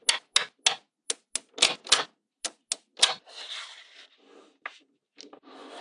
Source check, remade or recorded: recorded